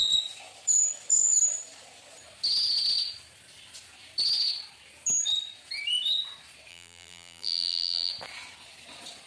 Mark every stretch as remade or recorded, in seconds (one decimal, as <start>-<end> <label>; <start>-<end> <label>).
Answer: 0.0-6.7 recorded; 6.7-8.1 remade; 8.1-9.3 recorded